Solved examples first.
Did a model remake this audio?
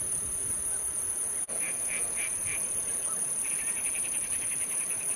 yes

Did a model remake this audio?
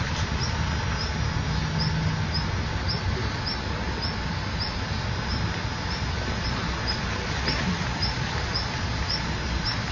no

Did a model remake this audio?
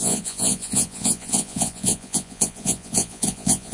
yes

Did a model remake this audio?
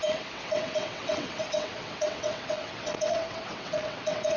yes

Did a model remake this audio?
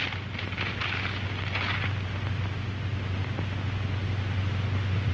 no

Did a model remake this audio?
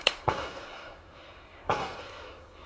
yes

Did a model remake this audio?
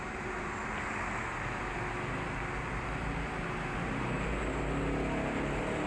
no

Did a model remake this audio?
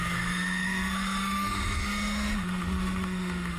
yes